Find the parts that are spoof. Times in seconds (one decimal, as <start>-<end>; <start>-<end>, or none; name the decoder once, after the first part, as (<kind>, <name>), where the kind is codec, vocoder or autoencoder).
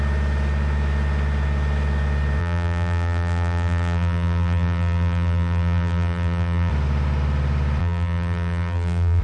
2.4-6.7 (vocoder, BigVGAN v2); 7.8-9.2